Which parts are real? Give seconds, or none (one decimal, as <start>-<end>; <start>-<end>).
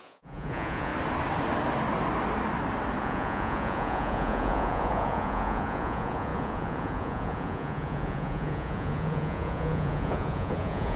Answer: 0.9-3.0